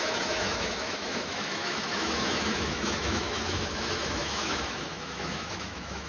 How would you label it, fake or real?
fake